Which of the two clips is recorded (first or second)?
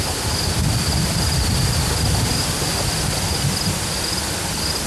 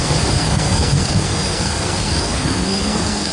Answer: first